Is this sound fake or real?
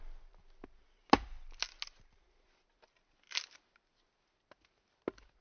real